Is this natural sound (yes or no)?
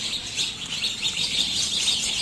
no